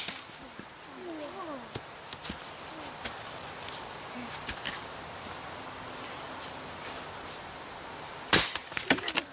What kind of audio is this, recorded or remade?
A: recorded